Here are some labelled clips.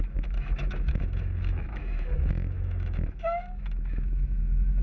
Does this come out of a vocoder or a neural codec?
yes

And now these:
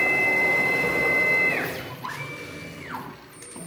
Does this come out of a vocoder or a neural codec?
no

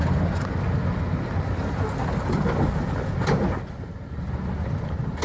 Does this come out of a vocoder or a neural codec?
no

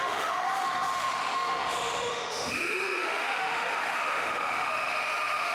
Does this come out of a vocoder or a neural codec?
yes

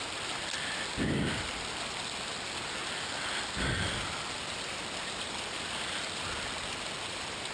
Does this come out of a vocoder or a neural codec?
no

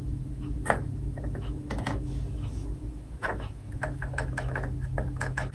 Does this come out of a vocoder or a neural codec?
yes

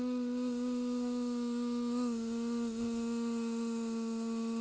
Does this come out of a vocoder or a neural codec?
yes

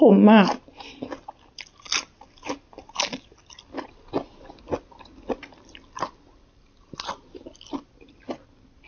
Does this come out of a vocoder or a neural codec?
no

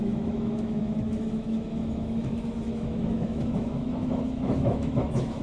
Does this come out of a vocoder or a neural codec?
yes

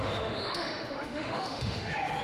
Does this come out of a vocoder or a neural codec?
yes